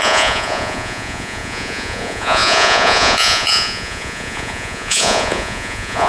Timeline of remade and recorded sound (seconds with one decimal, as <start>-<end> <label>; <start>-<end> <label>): 0.0-6.1 remade